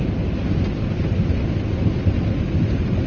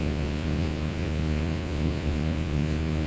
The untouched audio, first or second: first